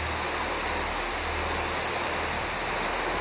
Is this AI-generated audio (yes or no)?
no